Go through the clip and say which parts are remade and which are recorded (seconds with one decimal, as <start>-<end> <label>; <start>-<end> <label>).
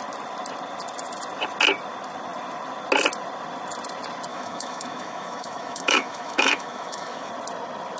0.0-4.3 recorded; 4.3-7.3 remade; 7.3-8.0 recorded